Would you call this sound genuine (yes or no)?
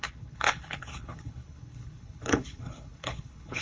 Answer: no